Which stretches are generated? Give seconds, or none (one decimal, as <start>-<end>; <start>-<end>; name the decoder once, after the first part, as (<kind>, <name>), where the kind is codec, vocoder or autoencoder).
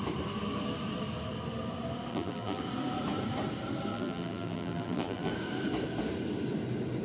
2.1-2.6 (vocoder, BigVGAN v2); 3.9-5.3